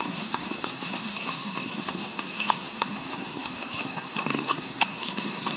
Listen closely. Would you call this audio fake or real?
fake